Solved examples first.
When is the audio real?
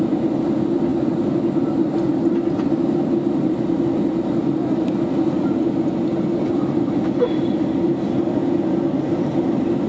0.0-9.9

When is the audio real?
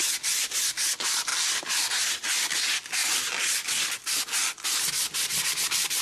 0.0-6.0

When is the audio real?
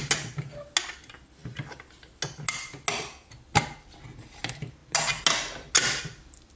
0.0-6.6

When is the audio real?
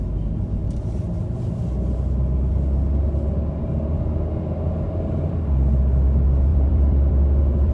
0.0-0.6; 1.6-6.5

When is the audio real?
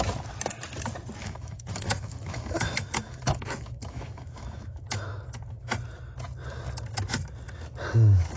0.0-1.2; 5.4-8.4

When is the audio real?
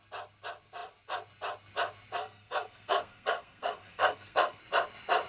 0.0-2.2; 4.6-5.3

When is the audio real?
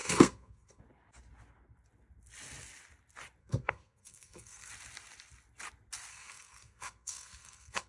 0.8-3.4; 4.7-6.1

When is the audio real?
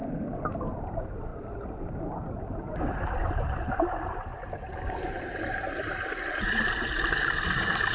0.0-0.8; 4.3-5.1